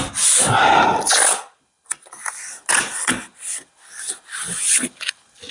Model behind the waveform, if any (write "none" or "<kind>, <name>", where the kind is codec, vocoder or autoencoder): none